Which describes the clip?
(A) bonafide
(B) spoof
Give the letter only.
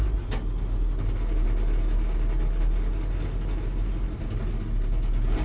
A